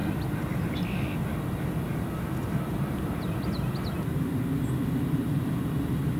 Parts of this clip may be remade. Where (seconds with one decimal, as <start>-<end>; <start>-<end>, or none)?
none